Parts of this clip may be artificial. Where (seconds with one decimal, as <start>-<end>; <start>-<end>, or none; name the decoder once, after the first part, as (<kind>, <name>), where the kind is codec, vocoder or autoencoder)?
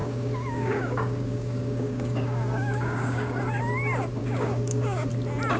0.0-3.4 (codec, DAC); 4.2-5.1